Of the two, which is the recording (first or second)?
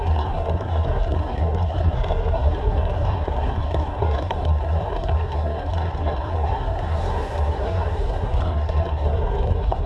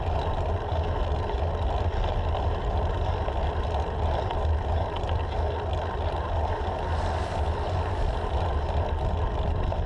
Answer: second